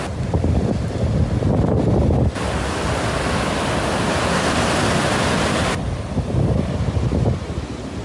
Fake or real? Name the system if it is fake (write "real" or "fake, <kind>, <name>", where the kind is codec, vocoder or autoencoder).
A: real